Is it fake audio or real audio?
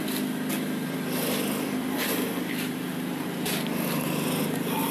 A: real